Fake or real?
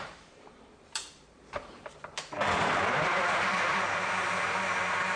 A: fake